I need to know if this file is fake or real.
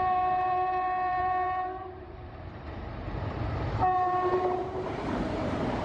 fake